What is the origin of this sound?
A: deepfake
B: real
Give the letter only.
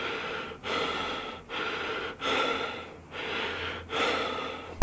B